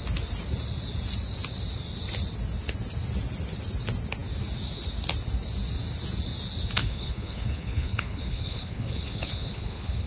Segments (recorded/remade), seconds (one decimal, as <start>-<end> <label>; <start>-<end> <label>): 0.0-6.8 recorded; 6.8-10.1 remade